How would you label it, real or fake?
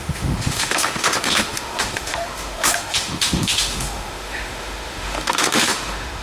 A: fake